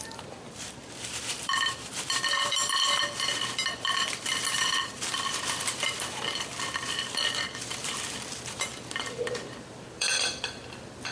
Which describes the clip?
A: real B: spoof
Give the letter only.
B